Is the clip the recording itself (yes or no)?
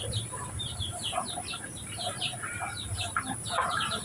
no